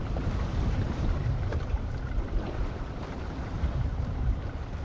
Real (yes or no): no